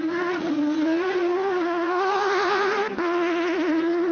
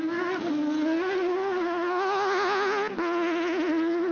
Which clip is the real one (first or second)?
second